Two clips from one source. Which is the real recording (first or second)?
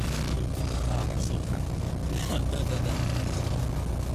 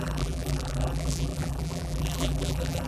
first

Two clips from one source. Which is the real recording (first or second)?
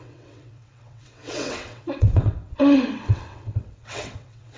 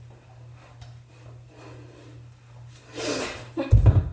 second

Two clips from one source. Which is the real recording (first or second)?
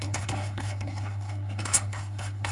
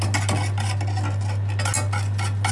second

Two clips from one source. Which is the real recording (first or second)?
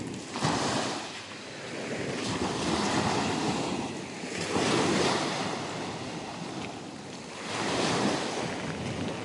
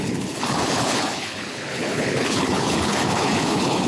first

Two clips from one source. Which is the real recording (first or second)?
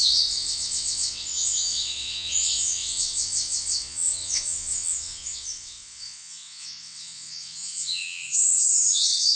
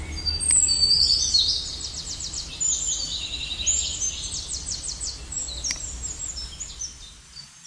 second